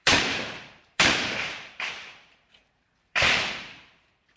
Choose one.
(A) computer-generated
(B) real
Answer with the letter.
A